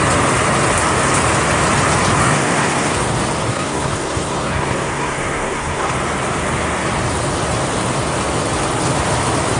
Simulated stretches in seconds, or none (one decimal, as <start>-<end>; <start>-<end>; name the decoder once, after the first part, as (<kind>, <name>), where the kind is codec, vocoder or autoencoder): 2.2-3.0 (codec, SNAC); 3.5-5.9